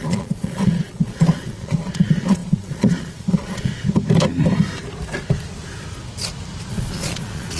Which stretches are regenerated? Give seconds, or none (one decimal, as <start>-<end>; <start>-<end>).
0.0-3.7; 6.7-7.6